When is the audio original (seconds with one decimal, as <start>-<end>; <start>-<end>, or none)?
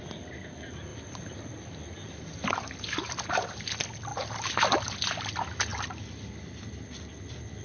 0.0-0.9; 2.5-4.1; 5.3-5.7; 6.3-7.6